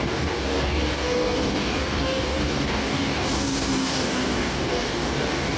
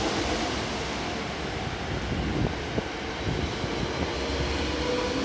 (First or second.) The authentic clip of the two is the second